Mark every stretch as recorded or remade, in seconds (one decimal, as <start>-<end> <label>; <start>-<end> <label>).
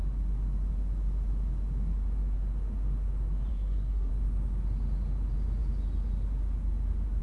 0.0-3.5 recorded; 3.5-4.1 remade; 4.1-7.2 recorded